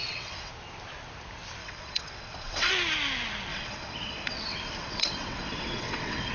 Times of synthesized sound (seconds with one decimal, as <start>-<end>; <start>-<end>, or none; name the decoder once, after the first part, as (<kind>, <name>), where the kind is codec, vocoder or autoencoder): 0.0-0.5 (vocoder, WaveNeXt); 1.6-2.7; 3.5-6.3